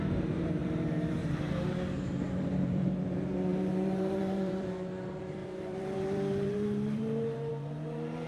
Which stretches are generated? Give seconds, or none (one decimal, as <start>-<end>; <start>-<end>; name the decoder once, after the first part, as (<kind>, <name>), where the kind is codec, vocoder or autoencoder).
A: 0.0-8.3 (vocoder, BigVGAN v2)